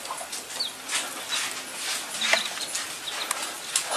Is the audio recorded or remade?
recorded